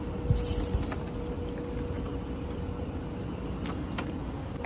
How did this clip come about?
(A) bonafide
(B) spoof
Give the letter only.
A